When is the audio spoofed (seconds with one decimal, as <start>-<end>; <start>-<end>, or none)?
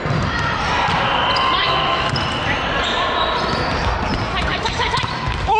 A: 1.6-2.1; 4.5-5.0